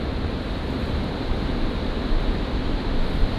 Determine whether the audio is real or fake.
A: real